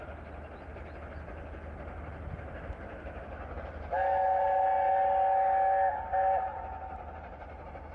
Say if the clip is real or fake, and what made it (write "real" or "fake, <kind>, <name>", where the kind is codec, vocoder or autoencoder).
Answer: real